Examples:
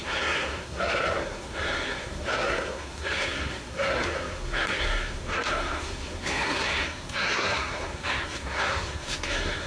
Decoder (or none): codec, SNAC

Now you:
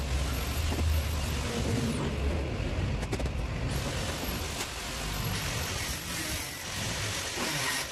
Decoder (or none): none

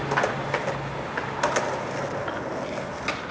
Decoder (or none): none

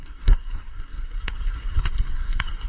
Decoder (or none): codec, SNAC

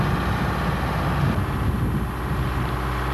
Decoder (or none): none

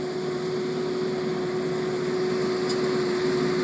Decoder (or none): none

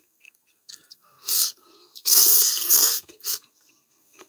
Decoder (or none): codec, SNAC